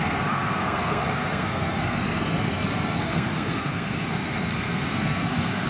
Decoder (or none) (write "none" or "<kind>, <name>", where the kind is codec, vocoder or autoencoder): codec, SNAC